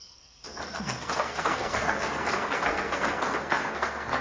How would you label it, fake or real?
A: fake